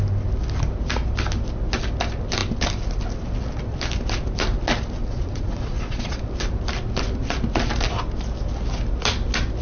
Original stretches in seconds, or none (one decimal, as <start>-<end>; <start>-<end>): 0.0-5.0; 6.2-9.6